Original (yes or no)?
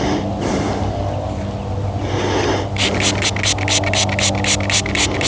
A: yes